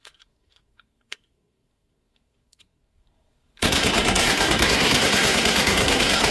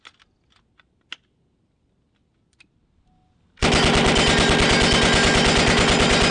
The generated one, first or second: first